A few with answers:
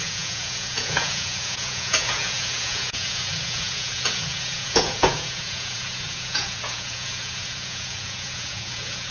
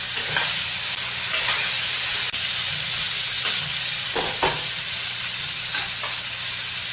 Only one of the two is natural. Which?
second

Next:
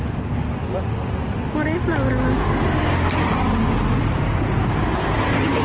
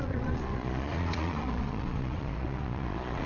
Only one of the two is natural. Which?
first